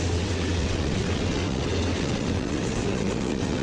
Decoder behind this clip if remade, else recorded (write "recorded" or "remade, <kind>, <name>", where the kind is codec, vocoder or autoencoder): remade, vocoder, WaveNeXt